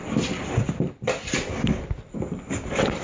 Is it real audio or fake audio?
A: fake